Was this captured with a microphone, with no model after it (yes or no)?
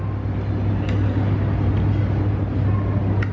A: yes